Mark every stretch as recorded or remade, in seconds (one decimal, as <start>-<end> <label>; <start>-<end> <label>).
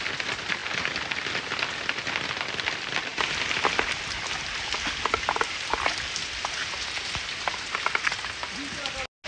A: 0.0-9.3 recorded